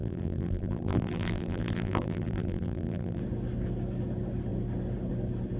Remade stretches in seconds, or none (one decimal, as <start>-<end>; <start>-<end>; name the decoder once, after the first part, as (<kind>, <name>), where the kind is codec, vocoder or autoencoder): 0.0-3.2 (vocoder, BigVGAN v2)